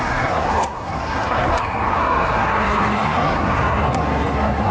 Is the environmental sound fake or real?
fake